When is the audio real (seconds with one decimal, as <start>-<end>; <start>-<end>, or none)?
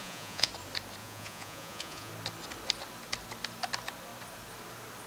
0.5-1.0; 2.1-5.1